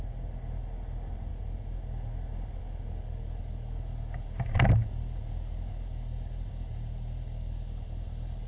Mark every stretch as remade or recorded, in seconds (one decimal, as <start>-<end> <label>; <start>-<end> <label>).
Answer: 0.0-8.5 recorded